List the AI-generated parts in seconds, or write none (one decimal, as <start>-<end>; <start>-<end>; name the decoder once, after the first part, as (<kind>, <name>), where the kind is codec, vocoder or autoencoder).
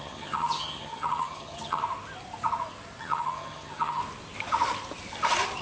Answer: 0.0-1.8 (vocoder, HiFi-GAN); 3.0-4.0